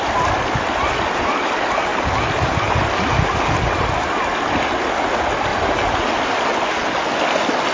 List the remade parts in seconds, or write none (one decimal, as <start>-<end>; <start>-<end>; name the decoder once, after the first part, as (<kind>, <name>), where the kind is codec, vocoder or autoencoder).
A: none